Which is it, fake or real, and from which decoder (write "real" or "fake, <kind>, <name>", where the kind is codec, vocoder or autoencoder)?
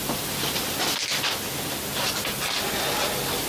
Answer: real